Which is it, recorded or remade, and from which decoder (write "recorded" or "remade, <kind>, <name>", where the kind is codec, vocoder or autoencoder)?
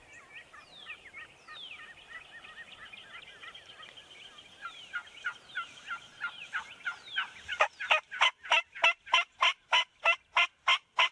recorded